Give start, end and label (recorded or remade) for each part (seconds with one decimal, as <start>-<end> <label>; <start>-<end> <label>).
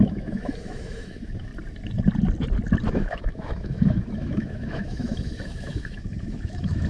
0.0-1.5 remade; 1.5-2.9 recorded; 2.9-6.9 remade